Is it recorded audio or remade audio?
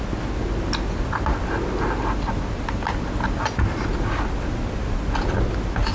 recorded